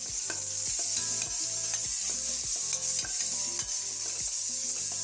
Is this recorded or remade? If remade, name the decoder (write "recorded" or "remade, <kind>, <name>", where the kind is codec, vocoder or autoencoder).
recorded